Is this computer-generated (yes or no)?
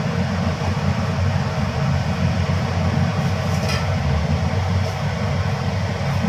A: no